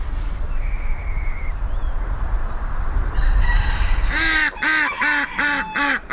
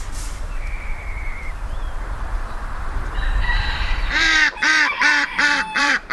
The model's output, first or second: second